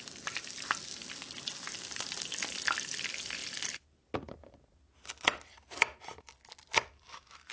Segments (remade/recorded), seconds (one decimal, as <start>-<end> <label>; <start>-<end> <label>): 0.0-7.5 recorded